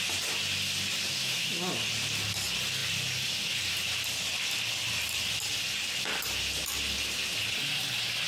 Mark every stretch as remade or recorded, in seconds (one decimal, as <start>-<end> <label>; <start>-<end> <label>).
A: 0.0-1.2 recorded; 1.2-1.7 remade; 1.7-8.3 recorded